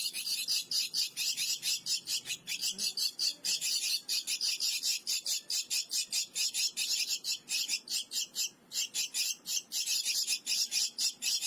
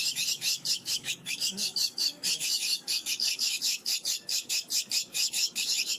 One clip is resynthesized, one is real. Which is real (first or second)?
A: first